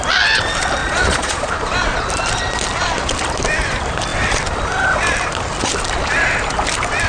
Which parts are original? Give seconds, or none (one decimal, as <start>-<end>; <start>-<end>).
0.0-0.8; 1.5-7.1

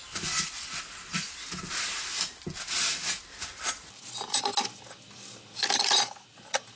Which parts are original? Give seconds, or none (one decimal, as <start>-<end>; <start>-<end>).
0.0-6.8

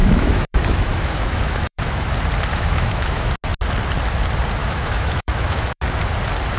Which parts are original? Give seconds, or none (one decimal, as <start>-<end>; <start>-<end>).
2.1-2.5; 3.3-4.6; 5.8-6.6

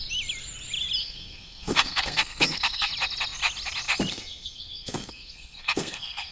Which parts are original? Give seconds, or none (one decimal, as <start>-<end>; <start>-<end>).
0.0-1.0; 2.9-4.1